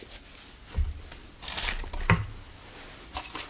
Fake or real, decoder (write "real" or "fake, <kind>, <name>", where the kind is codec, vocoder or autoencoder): real